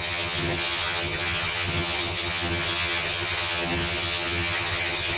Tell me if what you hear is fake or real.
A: fake